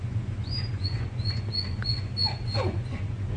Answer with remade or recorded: remade